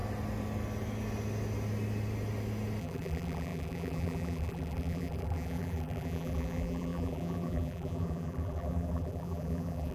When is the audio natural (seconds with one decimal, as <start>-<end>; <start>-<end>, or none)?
0.0-2.8